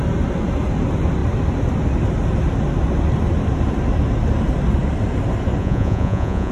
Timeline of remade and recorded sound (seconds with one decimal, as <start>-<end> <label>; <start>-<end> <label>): 0.0-5.6 recorded; 5.6-6.5 remade